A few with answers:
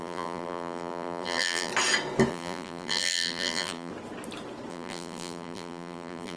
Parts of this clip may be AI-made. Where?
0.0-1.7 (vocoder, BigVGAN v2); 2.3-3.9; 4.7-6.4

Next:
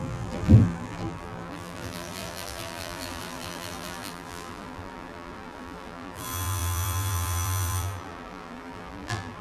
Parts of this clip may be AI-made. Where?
0.0-9.4 (vocoder, BigVGAN v2)

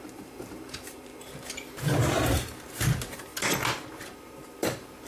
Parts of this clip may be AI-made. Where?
0.0-1.1 (vocoder, BigVGAN v2); 1.7-3.3; 3.9-5.1

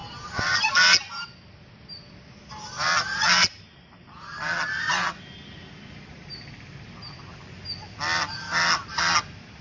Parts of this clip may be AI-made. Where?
none